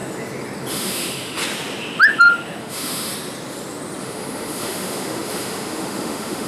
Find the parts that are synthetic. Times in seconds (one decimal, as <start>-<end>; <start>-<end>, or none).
0.7-1.4; 2.6-3.1; 4.0-6.5